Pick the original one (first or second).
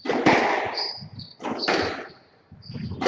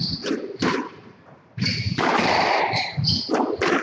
first